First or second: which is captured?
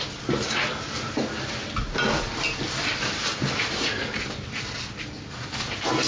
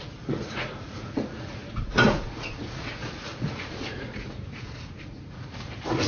first